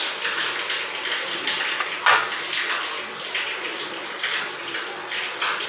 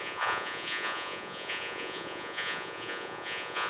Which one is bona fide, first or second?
first